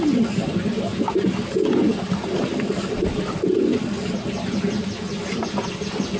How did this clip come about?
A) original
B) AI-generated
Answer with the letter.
A